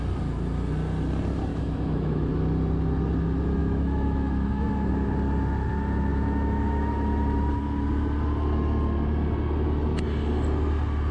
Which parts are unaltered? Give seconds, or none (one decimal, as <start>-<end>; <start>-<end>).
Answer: 0.0-1.5; 2.3-3.6; 4.9-6.1; 6.9-11.1